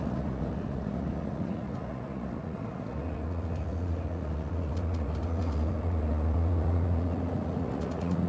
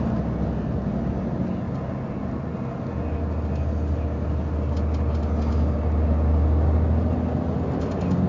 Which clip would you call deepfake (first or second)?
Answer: first